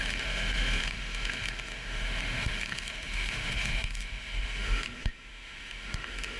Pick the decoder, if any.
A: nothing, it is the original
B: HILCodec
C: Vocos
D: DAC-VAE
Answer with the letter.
D